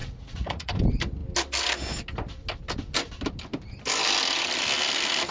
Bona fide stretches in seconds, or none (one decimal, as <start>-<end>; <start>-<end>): 0.7-5.3